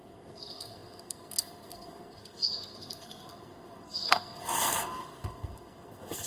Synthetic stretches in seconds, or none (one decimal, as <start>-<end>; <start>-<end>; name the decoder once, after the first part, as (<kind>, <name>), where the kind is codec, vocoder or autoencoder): 0.0-6.3 (codec, SNAC)